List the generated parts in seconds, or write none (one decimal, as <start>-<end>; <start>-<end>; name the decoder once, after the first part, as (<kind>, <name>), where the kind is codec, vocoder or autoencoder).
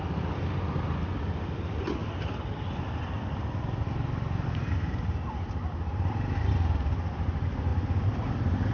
7.7-8.7 (vocoder, BigVGAN v2)